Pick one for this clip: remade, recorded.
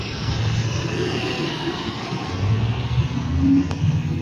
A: remade